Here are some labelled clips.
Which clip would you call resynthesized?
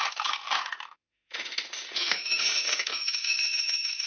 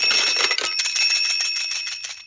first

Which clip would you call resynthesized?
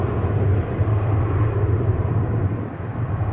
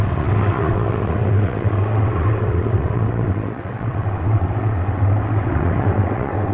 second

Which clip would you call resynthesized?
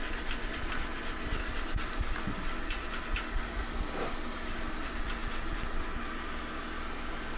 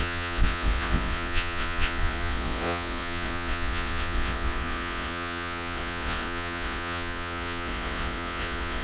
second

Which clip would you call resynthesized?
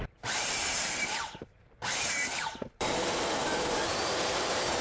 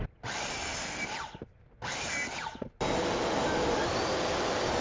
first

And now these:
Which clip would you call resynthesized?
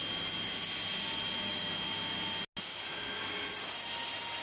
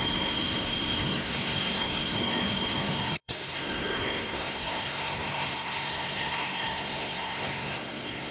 second